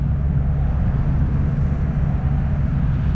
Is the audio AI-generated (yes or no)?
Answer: no